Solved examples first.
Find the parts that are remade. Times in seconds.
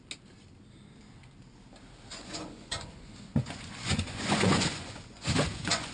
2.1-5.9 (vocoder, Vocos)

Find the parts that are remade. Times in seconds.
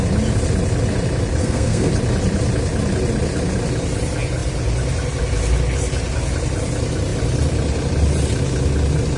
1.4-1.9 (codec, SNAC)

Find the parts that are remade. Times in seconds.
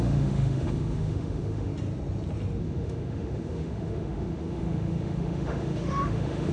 0.0-1.7 (autoencoder, DAC-VAE); 2.6-6.5